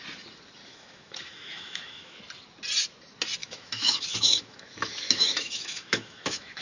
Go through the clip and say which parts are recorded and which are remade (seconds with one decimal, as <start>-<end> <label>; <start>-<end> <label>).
0.0-0.7 recorded; 0.7-2.2 remade; 2.2-3.4 recorded; 3.4-6.6 remade